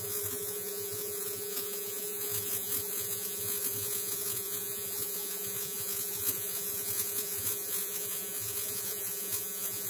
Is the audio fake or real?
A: fake